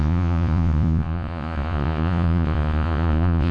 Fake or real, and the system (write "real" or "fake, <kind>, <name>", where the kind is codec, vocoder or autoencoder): fake, vocoder, Vocos